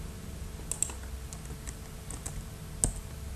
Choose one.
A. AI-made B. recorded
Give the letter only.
B